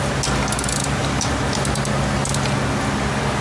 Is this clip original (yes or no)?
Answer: yes